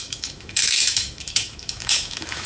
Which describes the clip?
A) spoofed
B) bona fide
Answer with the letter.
A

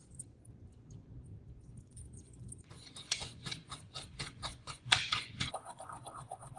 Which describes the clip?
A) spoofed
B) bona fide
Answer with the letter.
A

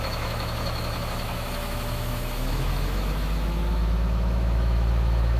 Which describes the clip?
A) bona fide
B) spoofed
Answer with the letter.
B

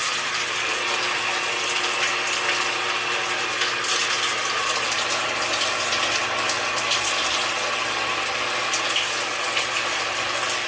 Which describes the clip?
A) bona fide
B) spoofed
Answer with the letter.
A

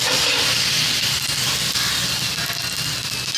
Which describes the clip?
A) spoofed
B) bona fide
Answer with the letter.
B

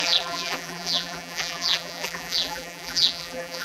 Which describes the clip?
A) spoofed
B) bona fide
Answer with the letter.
A